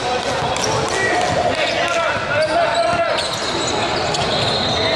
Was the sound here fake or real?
real